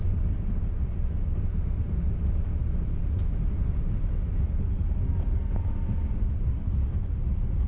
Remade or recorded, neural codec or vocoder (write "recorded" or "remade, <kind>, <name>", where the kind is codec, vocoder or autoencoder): recorded